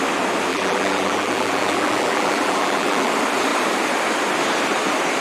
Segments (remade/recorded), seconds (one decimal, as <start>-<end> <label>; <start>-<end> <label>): 0.0-0.5 recorded; 0.5-3.1 remade; 3.1-5.2 recorded